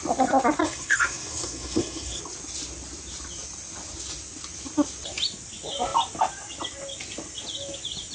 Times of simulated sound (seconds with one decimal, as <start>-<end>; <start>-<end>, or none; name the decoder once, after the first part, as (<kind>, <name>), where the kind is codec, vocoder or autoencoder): 0.6-2.2 (codec, SNAC)